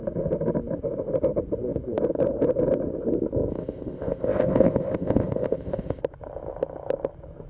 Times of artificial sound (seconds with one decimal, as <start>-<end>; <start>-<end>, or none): 3.5-6.0